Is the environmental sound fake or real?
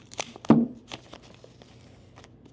real